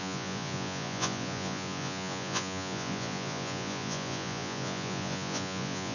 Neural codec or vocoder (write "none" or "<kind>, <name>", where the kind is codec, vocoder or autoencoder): vocoder, Vocos